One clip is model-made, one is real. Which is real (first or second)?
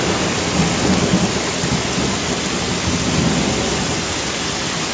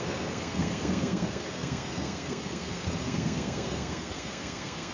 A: first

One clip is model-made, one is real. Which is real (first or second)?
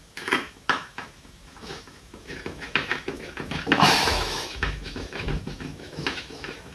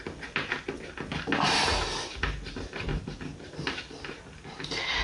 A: second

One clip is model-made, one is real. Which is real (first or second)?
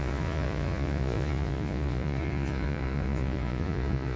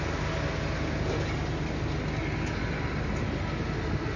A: second